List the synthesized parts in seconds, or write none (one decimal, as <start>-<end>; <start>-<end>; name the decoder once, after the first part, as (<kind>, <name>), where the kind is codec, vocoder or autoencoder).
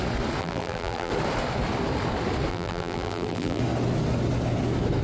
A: 0.4-1.1 (vocoder, BigVGAN v2); 2.5-3.6